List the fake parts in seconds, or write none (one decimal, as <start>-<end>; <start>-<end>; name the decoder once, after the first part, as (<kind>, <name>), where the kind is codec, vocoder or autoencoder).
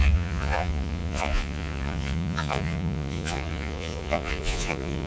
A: 0.0-5.1 (vocoder, Vocos)